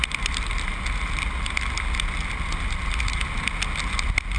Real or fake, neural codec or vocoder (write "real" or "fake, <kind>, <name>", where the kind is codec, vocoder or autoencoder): real